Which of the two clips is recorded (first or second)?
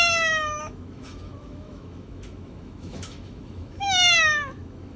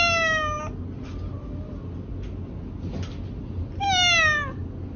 second